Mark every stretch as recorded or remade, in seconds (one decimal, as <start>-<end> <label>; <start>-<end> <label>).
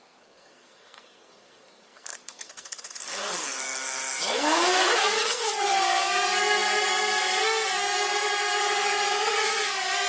0.0-10.1 remade